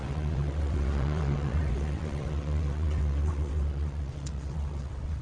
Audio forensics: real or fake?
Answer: fake